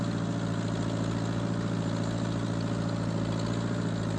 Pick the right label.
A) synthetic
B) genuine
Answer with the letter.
B